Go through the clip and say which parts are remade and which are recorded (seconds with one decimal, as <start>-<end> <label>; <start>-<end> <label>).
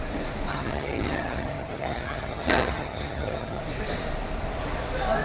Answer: 0.0-0.5 recorded; 0.5-3.6 remade; 3.6-5.2 recorded